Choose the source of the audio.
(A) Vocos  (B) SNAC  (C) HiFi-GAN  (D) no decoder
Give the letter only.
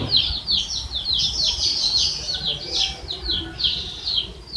D